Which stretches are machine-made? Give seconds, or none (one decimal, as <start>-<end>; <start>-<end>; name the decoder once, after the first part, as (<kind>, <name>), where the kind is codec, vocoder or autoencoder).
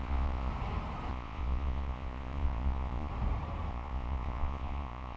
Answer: 0.0-0.5 (vocoder, Vocos); 1.1-3.1; 3.7-5.2